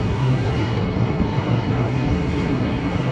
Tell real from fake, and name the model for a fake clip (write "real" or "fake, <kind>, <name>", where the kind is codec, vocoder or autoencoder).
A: fake, codec, SNAC